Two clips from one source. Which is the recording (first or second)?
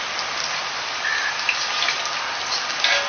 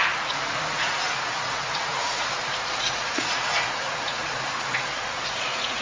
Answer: first